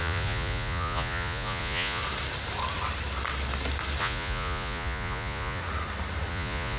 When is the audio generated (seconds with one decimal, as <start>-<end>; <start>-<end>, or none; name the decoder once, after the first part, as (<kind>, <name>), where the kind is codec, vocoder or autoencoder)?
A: 0.0-2.0 (vocoder, Vocos); 4.0-5.6; 6.3-6.8